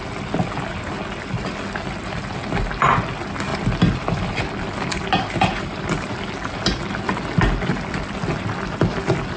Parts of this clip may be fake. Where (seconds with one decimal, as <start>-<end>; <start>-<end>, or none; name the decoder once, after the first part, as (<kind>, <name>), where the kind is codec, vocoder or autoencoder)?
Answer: none